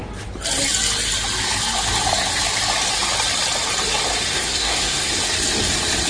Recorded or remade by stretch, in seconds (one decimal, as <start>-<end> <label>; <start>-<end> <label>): 0.0-4.3 recorded; 4.3-5.1 remade; 5.1-6.1 recorded